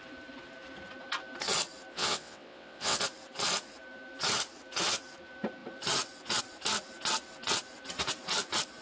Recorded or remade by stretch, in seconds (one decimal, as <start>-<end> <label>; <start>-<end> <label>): 0.0-1.9 recorded; 1.9-3.0 remade; 3.0-8.8 recorded